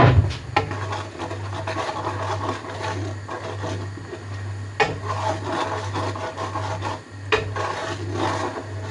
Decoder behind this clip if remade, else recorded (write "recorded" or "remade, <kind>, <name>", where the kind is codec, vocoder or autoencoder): recorded